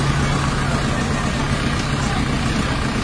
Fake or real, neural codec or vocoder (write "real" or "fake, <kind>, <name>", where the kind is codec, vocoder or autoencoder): real